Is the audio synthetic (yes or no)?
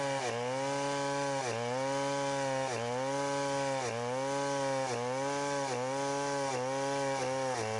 no